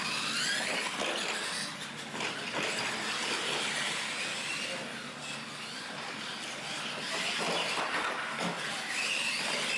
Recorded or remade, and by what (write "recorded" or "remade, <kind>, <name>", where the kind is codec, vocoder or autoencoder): recorded